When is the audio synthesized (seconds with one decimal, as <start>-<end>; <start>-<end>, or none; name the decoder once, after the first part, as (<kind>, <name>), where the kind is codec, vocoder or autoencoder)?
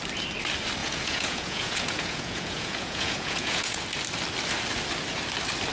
0.8-3.8 (vocoder, Vocos)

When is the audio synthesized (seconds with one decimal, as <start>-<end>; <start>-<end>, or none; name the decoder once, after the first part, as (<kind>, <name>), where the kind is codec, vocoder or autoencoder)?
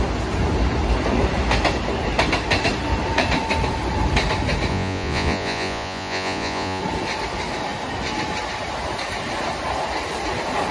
4.7-6.8 (vocoder, Vocos)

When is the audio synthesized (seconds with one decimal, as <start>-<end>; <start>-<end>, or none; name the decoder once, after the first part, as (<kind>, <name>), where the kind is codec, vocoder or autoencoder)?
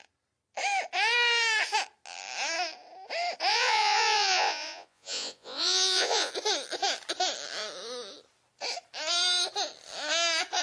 3.5-6.3 (vocoder, Vocos)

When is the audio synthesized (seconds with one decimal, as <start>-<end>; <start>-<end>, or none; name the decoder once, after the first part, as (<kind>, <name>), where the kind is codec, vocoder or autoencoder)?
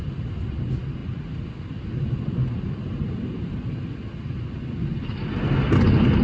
none